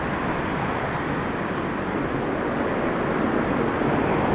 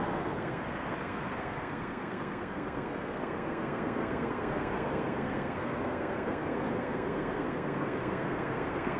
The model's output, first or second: second